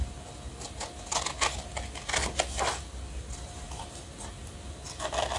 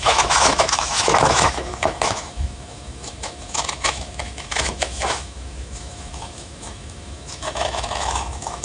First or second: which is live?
first